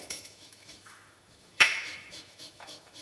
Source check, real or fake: fake